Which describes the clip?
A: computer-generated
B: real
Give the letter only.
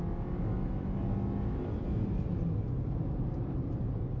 B